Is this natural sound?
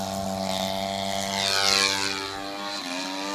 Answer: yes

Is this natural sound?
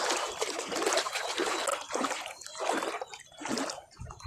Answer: yes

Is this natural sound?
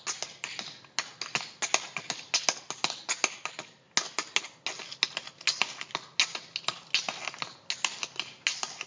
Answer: yes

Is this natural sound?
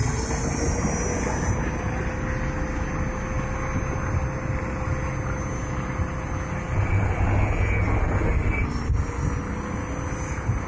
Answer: yes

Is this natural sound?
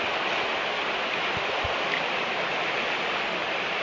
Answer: yes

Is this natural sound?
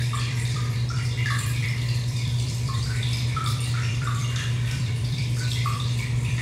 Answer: no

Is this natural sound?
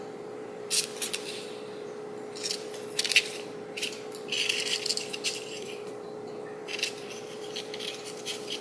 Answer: no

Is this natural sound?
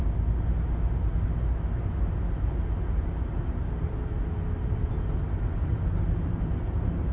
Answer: yes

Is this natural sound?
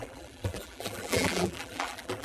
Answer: no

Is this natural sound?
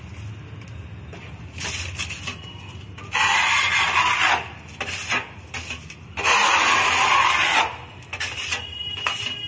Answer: yes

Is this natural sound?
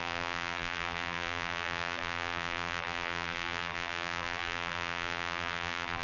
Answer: no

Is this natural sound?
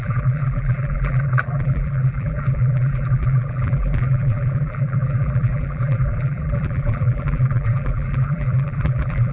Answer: no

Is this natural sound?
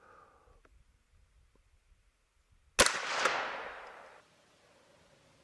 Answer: yes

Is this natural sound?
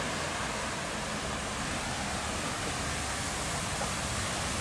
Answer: yes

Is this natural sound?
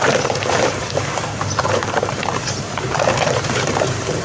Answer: no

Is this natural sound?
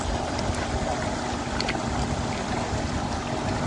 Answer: yes